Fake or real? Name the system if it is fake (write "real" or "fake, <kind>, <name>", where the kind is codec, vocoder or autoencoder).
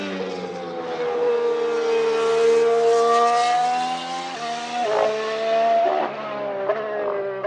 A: real